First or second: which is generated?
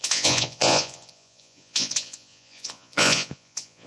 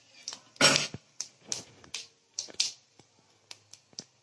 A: first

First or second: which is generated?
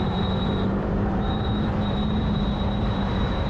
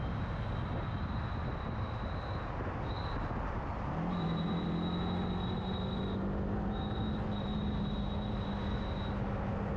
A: first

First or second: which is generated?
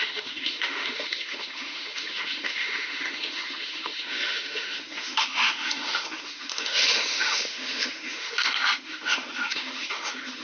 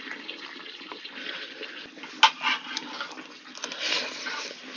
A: first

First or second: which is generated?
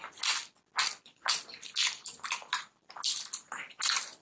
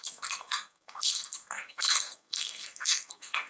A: second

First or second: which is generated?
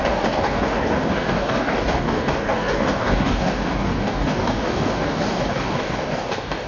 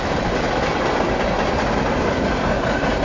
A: first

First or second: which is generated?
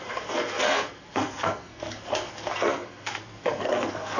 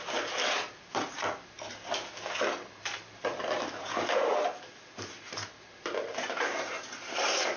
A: first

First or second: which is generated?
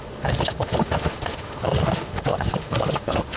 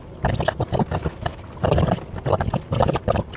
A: first